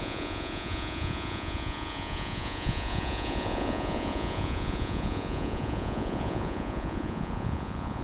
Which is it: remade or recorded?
remade